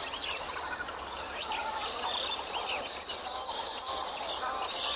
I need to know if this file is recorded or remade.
recorded